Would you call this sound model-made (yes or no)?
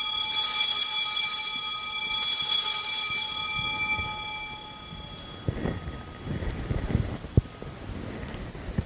no